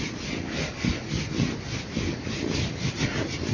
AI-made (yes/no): no